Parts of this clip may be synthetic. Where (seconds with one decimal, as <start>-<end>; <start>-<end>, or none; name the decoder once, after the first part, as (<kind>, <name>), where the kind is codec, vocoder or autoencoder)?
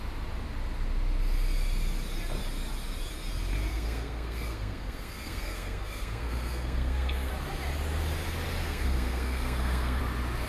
3.7-7.3 (codec, SNAC); 8.6-10.0